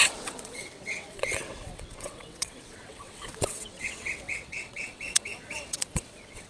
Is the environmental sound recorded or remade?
remade